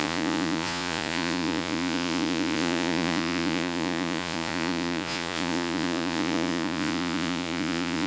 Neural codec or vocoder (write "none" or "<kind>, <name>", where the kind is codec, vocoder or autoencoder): vocoder, Vocos